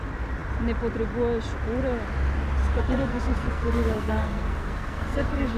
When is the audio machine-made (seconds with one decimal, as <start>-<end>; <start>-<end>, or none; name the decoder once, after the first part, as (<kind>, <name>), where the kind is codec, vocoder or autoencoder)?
2.6-5.6 (codec, SNAC)